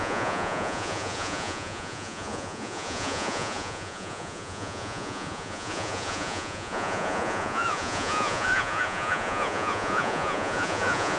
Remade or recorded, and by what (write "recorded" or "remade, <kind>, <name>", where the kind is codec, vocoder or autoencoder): remade, vocoder, Vocos